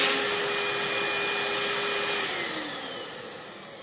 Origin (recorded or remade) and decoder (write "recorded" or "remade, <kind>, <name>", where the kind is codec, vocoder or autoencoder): recorded